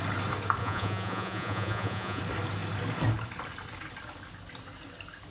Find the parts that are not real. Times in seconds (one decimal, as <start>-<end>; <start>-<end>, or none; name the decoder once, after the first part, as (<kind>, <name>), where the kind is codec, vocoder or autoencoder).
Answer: 0.6-2.2 (vocoder, Vocos)